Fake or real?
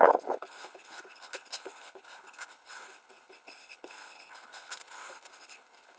fake